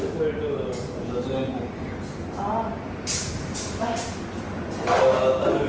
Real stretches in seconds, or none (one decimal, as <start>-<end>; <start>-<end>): 0.0-5.7